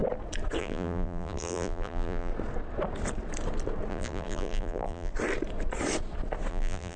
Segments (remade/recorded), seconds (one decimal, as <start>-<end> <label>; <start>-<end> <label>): 0.0-0.6 recorded; 0.6-2.3 remade; 2.3-3.9 recorded; 3.9-5.1 remade; 5.1-6.5 recorded; 6.5-7.0 remade